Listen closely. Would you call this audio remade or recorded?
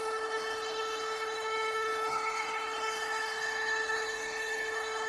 remade